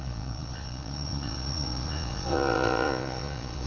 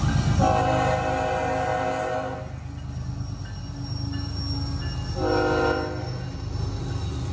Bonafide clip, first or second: second